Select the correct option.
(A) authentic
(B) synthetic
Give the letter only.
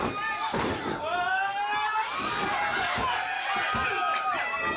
A